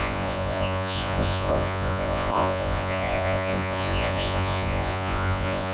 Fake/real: fake